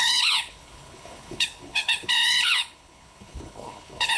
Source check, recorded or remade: remade